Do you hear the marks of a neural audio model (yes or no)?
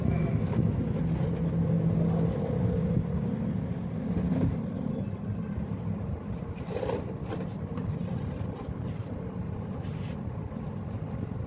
no